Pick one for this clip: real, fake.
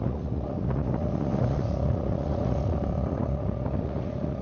fake